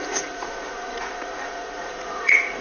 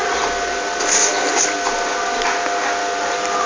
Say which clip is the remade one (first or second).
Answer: first